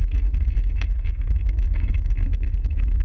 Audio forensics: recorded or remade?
remade